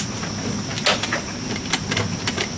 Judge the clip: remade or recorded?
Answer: recorded